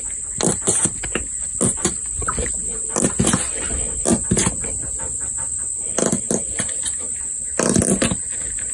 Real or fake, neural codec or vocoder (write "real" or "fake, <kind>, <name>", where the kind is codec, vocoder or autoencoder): real